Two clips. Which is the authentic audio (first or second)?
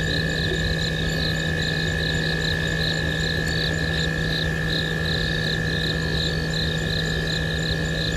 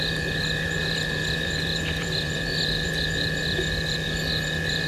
first